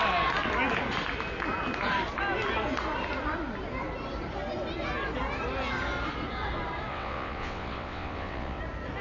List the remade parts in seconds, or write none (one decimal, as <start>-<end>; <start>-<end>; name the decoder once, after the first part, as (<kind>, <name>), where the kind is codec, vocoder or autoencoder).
6.9-8.6 (vocoder, WaveNeXt)